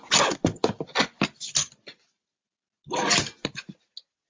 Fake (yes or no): no